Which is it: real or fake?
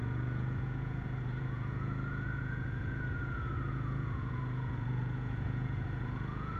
fake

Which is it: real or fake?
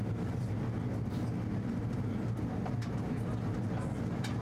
real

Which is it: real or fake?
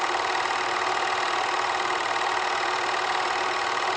real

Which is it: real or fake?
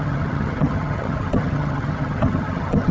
fake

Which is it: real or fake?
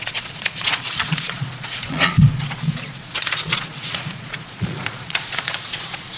fake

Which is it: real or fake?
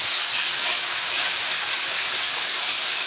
fake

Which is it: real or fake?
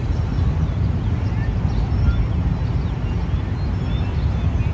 real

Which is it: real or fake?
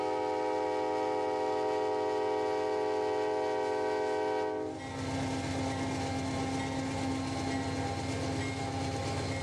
real